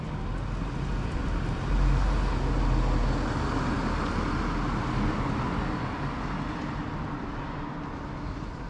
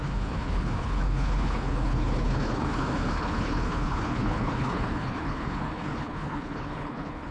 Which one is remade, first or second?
second